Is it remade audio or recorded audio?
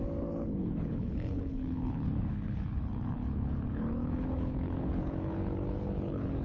remade